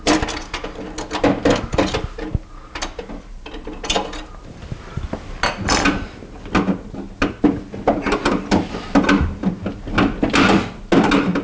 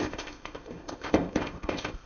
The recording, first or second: first